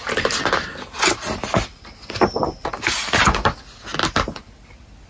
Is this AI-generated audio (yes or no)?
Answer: no